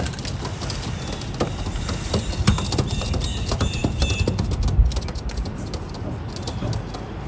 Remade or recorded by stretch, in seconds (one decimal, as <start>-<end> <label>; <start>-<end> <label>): 0.0-7.3 recorded